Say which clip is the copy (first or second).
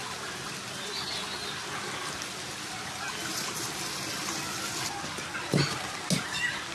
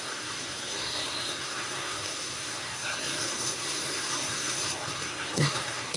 second